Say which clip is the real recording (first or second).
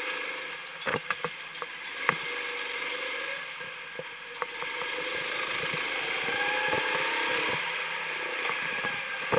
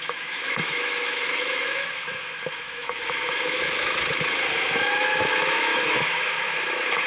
first